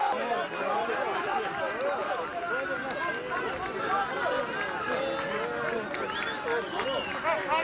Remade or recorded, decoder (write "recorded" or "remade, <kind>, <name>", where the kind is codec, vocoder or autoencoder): recorded